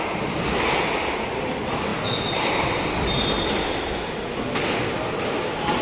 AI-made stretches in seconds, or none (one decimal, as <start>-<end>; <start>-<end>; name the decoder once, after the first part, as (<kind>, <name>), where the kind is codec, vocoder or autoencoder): none